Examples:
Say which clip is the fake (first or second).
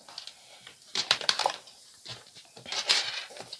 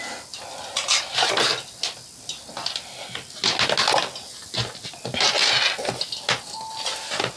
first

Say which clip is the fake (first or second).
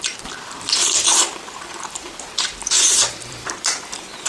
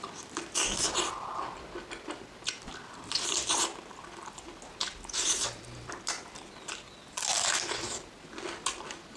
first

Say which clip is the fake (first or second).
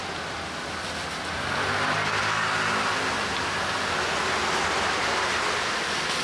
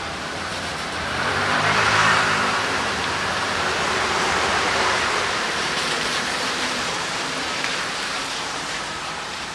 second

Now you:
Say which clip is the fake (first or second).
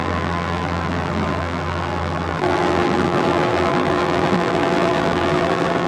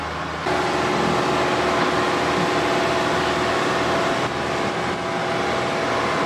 first